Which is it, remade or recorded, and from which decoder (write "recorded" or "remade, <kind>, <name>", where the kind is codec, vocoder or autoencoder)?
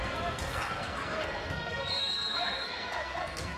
remade, codec, SNAC